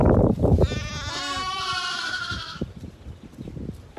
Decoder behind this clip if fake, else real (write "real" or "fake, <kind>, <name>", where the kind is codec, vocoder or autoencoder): real